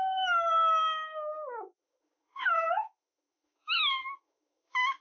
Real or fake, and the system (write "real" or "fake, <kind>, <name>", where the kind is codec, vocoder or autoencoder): fake, autoencoder, DAC-VAE